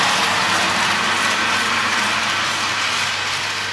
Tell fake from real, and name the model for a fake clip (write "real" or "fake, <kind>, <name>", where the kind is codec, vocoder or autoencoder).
real